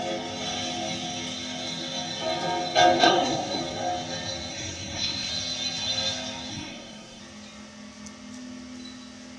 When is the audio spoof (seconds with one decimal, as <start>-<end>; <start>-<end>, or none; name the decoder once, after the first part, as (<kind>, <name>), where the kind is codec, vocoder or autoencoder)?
3.0-3.6 (codec, SNAC); 4.5-5.3; 6.5-7.2

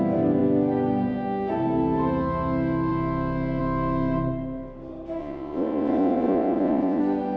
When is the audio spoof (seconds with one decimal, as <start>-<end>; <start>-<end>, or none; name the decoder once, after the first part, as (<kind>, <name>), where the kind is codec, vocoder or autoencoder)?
5.2-7.0 (vocoder, Vocos)

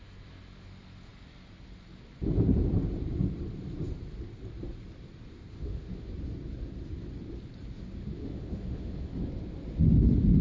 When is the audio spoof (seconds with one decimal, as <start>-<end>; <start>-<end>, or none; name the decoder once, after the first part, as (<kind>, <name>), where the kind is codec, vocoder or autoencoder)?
5.3-6.1 (autoencoder, DAC-VAE); 8.0-9.1

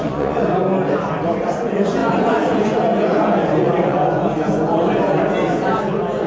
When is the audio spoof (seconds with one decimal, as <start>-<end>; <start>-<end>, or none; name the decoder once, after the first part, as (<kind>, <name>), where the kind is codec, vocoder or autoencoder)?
0.0-0.6 (vocoder, Vocos); 1.4-6.3

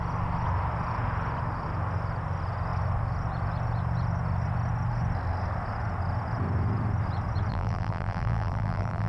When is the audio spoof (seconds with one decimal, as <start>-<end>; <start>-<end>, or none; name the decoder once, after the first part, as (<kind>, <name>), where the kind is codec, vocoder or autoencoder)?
7.5-9.1 (vocoder, BigVGAN v2)

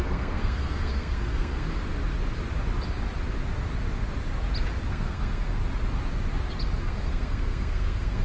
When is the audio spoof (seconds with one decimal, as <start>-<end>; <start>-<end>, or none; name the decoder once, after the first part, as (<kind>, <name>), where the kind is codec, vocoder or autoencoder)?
0.0-1.8 (codec, SNAC); 4.9-5.6; 6.8-8.2